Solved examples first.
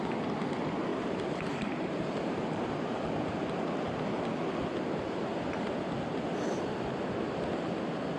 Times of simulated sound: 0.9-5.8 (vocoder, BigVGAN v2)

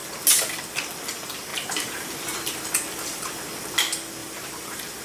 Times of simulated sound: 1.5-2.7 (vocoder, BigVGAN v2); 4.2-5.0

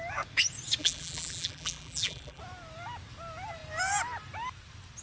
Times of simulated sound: 0.8-2.4 (vocoder, BigVGAN v2)

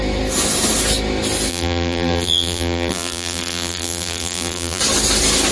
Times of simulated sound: 1.5-4.8 (vocoder, BigVGAN v2)

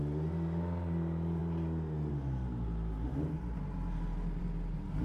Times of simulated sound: none

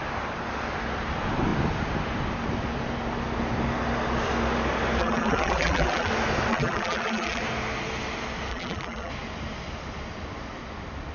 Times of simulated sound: 5.0-6.1 (vocoder, BigVGAN v2); 6.5-7.4; 8.5-9.1

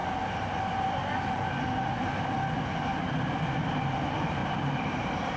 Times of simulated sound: 0.0-1.8 (vocoder, BigVGAN v2); 4.4-5.4